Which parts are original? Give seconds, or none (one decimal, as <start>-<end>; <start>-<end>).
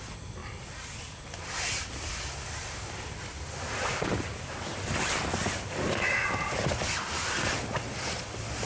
0.0-8.7